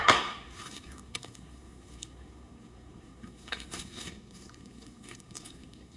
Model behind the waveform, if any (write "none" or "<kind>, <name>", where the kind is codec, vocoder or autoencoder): codec, SNAC